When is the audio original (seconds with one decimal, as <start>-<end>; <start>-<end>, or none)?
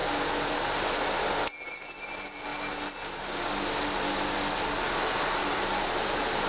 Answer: 0.0-5.4